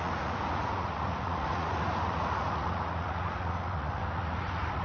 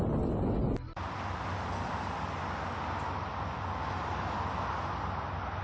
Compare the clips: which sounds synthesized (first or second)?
first